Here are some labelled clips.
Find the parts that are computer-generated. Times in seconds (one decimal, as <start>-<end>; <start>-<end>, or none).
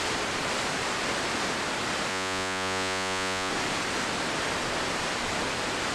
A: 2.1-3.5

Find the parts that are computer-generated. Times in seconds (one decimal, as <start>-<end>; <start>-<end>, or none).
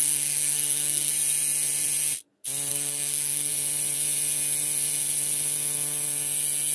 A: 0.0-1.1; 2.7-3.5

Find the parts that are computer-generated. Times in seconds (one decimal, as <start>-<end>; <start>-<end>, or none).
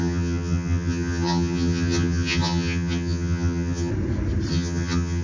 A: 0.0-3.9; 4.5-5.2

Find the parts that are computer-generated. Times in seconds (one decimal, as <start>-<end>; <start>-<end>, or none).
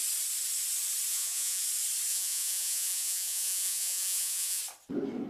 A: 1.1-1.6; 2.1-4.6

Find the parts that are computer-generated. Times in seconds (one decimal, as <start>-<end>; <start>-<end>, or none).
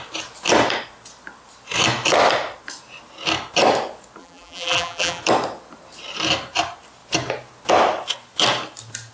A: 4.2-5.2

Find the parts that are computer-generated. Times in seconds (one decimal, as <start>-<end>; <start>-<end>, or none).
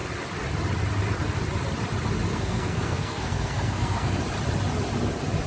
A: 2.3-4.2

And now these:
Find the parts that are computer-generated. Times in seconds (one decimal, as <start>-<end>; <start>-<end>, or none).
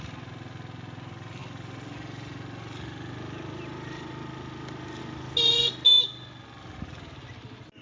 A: none